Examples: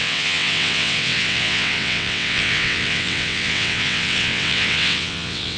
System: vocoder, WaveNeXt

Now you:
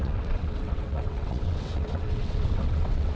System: vocoder, WaveNeXt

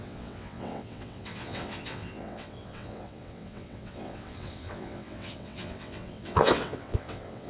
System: vocoder, WaveNeXt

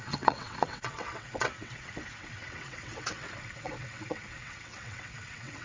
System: vocoder, WaveNeXt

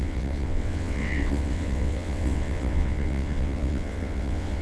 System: vocoder, WaveNeXt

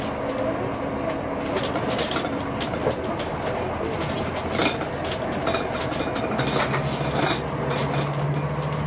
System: none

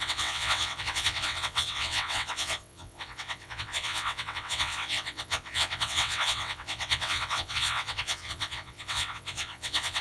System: vocoder, WaveNeXt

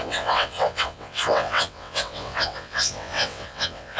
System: vocoder, WaveNeXt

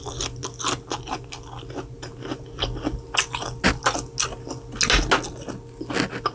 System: none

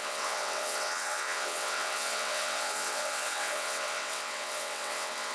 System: vocoder, WaveNeXt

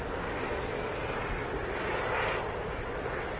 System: none